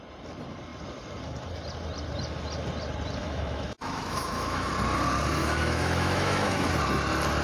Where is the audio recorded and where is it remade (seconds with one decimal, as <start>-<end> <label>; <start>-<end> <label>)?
0.0-3.2 recorded; 3.2-4.7 remade; 4.7-5.4 recorded; 5.4-6.7 remade; 6.7-7.4 recorded